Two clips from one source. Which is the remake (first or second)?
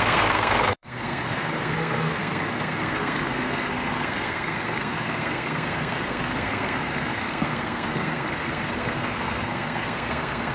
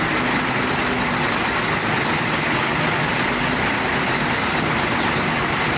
first